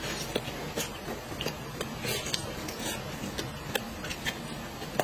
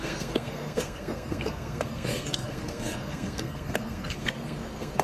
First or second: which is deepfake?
second